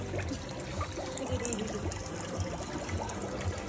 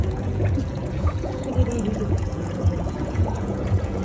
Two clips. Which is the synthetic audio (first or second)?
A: second